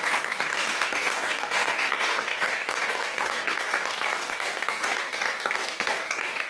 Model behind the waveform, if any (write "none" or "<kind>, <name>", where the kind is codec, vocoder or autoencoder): codec, DAC